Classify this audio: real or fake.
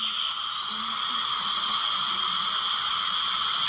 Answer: real